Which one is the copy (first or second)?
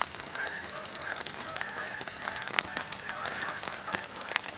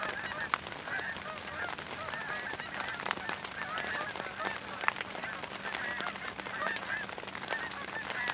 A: first